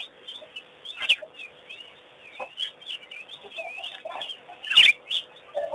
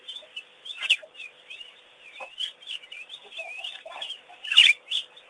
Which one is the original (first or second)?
first